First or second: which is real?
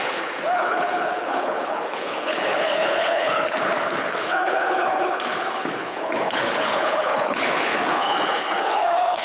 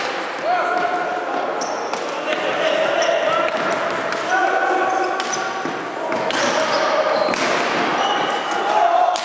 second